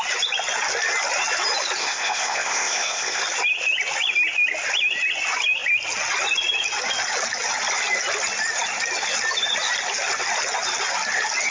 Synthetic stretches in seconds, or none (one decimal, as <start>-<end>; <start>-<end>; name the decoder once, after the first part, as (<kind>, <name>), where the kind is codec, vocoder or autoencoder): 1.8-3.2 (codec, ZipCodec)